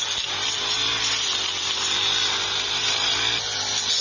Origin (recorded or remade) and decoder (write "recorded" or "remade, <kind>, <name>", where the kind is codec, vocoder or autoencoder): recorded